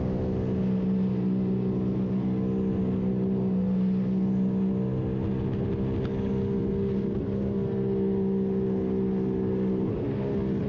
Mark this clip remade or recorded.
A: recorded